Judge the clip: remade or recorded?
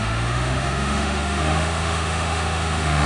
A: remade